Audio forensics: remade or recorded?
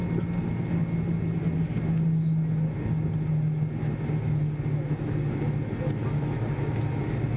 recorded